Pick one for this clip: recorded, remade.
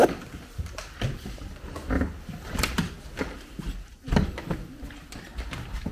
recorded